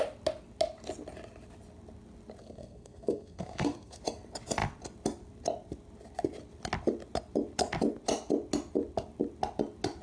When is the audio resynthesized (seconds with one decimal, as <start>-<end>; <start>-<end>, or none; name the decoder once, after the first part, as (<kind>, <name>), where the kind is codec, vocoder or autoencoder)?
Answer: 2.4-4.0 (codec, SNAC)